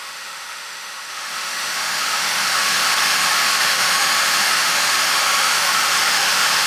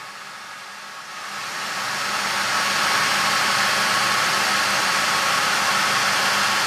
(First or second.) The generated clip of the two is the first